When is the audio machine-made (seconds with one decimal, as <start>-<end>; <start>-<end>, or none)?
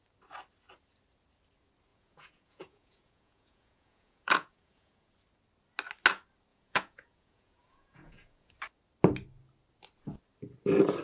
1.9-5.1; 6.5-8.5